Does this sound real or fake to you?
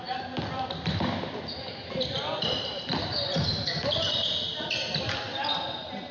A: fake